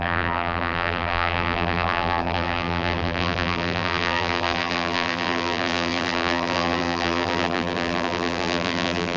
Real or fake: fake